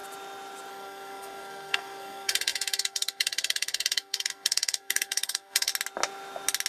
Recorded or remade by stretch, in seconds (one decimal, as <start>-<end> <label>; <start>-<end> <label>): 0.0-0.7 recorded; 0.7-5.7 remade; 5.7-6.7 recorded